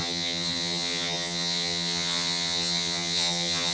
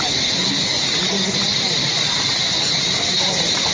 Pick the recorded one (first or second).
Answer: second